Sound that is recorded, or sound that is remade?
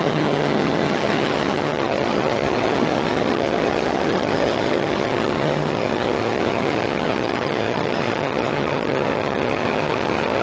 remade